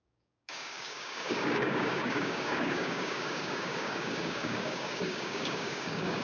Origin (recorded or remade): remade